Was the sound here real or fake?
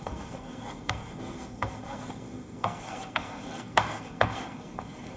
fake